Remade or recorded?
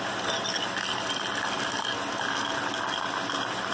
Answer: recorded